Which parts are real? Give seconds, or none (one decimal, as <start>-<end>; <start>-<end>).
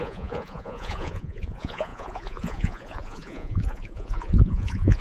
none